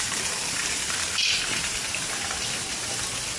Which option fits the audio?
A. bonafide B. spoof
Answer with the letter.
A